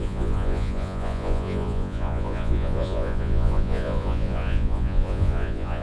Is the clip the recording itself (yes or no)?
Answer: no